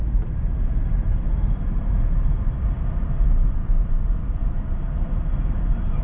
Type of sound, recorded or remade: remade